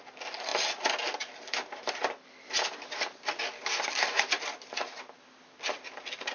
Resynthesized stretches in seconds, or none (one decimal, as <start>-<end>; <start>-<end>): none